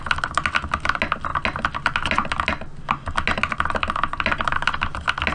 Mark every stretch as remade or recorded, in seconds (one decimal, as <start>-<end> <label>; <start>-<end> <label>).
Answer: 0.0-5.3 recorded